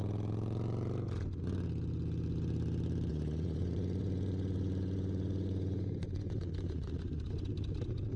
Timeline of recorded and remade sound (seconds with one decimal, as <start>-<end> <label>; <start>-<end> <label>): 0.0-3.1 recorded; 3.1-7.5 remade; 7.5-8.2 recorded